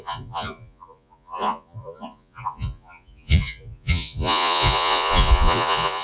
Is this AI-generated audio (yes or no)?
yes